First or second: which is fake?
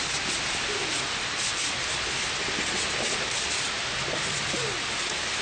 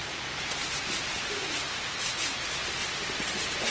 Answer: second